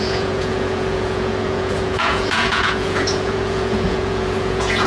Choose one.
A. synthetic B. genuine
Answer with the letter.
A